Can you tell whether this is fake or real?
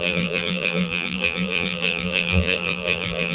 fake